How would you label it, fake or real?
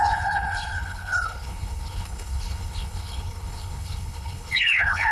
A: fake